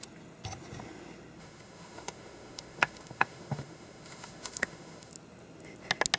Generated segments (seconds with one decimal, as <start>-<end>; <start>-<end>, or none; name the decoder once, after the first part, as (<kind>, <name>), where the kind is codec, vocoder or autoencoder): 1.4-5.1 (autoencoder, DAC-VAE)